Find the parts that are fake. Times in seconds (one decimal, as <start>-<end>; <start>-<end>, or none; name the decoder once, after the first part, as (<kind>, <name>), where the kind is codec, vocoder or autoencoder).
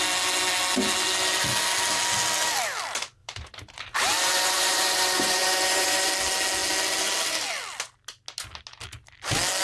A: 3.2-6.1 (vocoder, BigVGAN v2)